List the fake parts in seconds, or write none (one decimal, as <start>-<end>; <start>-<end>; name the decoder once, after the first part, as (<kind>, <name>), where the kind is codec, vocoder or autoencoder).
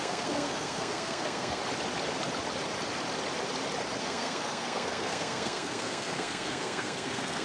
0.0-1.6 (codec, SNAC); 4.0-7.4